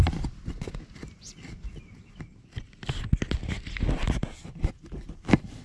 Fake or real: real